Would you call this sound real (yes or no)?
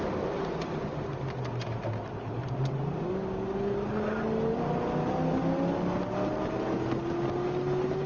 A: yes